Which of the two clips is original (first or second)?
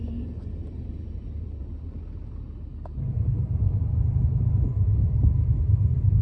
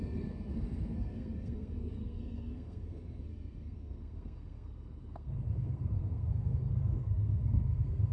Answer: first